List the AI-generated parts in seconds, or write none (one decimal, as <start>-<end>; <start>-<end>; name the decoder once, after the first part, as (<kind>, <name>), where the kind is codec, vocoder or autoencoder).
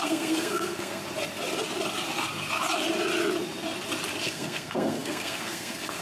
0.0-1.0 (codec, SNAC); 4.2-6.0